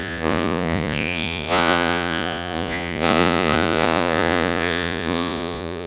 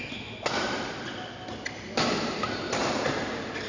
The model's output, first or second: first